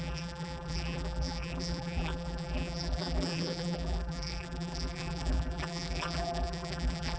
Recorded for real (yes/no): no